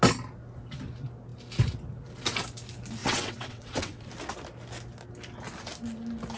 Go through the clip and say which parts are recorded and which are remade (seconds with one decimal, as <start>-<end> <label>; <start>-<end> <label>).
0.0-3.0 recorded; 3.0-4.0 remade; 4.0-6.4 recorded